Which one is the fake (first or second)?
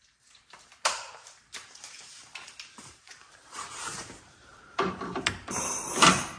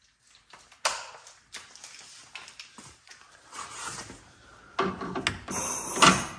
first